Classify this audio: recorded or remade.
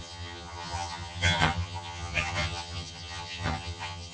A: remade